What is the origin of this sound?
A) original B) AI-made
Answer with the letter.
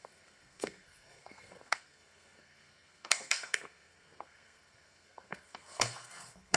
B